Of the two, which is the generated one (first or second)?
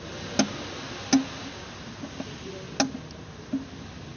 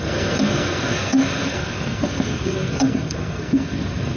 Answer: second